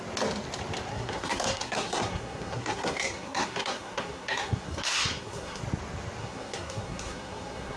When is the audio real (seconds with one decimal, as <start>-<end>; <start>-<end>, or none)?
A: 0.0-0.9; 5.6-6.2